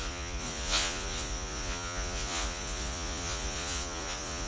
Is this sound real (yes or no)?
no